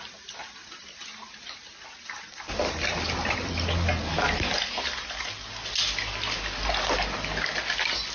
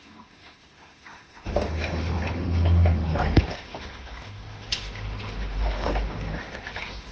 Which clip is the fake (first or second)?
second